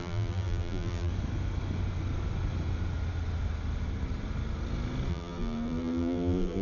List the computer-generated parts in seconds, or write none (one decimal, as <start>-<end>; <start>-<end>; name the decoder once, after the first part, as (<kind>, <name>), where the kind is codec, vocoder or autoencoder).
0.0-1.1 (vocoder, BigVGAN v2); 5.1-6.6